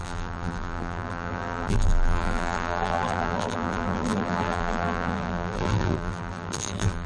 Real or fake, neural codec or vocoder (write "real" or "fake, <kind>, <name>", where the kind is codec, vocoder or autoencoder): fake, vocoder, BigVGAN v2